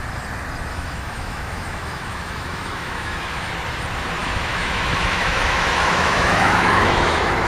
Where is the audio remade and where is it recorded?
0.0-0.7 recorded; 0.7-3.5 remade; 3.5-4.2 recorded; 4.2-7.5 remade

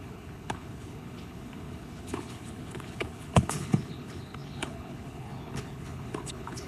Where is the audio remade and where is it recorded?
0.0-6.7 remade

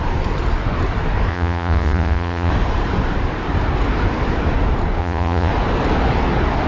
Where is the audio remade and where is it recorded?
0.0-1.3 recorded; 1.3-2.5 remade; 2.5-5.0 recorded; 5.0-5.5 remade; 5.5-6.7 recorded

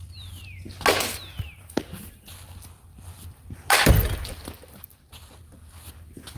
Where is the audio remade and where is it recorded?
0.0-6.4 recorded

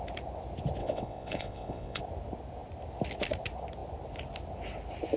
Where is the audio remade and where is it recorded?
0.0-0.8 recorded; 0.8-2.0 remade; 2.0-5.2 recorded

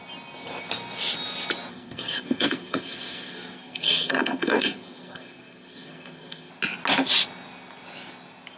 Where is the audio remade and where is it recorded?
0.0-1.7 recorded; 1.7-6.5 remade; 6.5-8.6 recorded